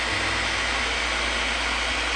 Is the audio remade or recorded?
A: recorded